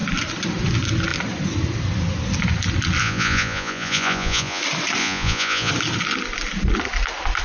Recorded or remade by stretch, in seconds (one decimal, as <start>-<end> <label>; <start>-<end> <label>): 0.0-3.0 recorded; 3.0-4.6 remade; 4.6-5.0 recorded; 5.0-5.7 remade; 5.7-7.4 recorded